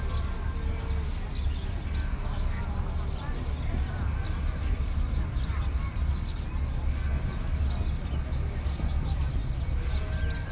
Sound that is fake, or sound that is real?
real